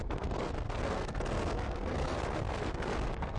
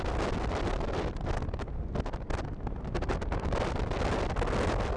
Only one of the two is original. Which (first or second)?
second